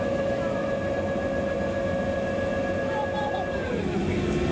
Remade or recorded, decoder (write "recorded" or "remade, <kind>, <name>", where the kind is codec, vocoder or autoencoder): recorded